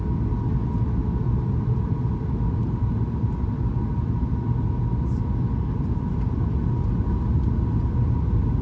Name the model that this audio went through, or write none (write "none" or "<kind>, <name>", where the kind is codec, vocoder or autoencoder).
none